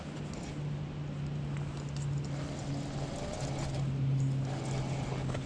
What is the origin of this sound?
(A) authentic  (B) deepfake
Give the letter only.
A